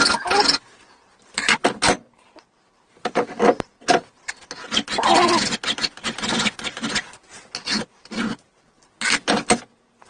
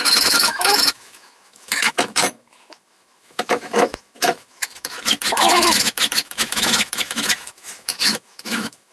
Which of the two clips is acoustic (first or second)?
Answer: first